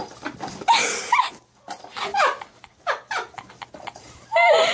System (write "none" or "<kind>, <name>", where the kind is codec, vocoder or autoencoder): none